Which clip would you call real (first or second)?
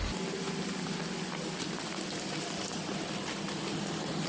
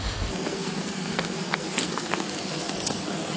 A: first